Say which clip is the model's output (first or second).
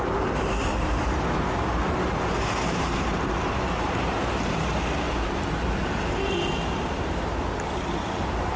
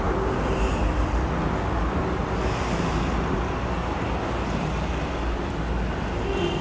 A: first